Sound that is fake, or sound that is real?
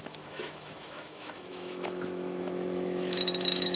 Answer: fake